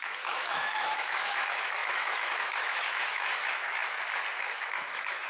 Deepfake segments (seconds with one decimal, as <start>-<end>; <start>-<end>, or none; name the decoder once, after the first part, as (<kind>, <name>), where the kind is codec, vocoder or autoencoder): 0.0-3.8 (autoencoder, DAC-VAE); 4.3-5.3

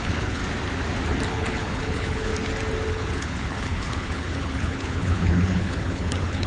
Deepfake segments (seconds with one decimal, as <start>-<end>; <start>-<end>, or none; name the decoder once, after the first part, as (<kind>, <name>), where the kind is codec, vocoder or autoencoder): 0.0-0.4 (codec, HILCodec); 1.3-2.3; 2.9-6.5

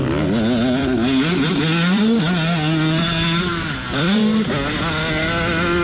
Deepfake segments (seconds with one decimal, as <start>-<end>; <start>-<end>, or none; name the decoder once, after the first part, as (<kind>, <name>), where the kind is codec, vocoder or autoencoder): 0.8-2.2 (vocoder, BigVGAN v2); 3.5-4.2

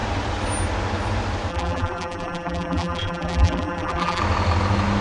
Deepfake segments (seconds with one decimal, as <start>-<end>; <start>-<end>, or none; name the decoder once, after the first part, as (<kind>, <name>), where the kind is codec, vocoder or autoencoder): 1.5-4.2 (vocoder, BigVGAN v2)

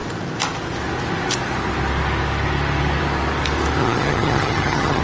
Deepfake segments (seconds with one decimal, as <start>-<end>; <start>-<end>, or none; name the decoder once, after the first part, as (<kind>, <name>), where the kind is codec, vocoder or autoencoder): 3.8-5.0 (vocoder, HiFi-GAN)

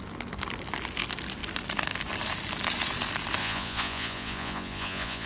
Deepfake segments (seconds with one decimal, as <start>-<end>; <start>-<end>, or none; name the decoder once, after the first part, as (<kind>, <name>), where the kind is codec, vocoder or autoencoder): 3.4-5.3 (vocoder, Vocos)